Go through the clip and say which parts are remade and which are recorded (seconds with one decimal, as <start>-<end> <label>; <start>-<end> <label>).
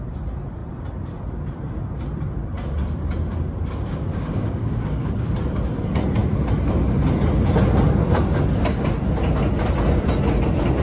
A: 0.0-4.1 recorded; 4.1-5.1 remade; 5.1-10.8 recorded